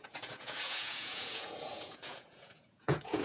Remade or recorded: remade